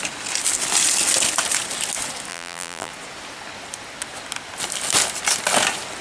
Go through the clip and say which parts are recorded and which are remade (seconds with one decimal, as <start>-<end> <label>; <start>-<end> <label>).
0.0-2.3 recorded; 2.3-2.9 remade; 2.9-6.0 recorded